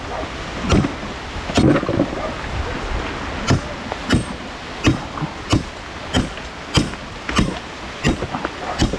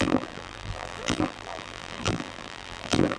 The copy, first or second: second